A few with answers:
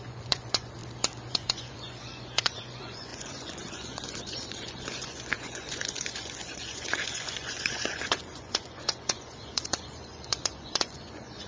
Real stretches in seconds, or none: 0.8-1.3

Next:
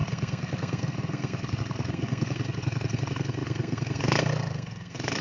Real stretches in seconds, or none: none